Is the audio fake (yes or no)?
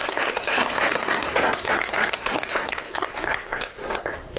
yes